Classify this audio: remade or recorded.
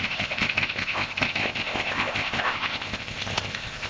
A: remade